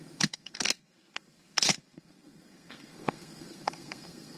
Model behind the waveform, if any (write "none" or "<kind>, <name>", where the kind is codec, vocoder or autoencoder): codec, SNAC